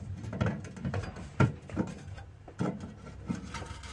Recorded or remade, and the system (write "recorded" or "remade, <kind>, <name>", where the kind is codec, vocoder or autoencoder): recorded